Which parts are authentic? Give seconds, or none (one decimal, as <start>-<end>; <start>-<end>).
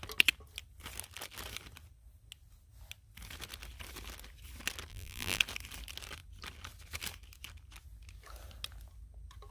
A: 0.0-4.9; 5.4-9.5